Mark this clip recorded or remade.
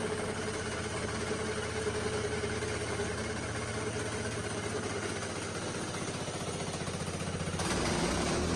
recorded